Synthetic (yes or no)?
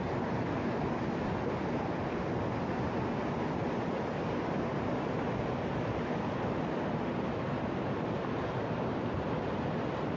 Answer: no